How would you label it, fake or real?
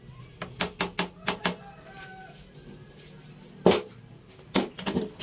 real